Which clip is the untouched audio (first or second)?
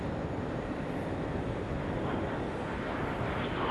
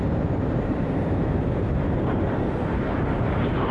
first